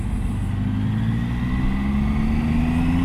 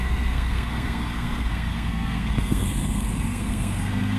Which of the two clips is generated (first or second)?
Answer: second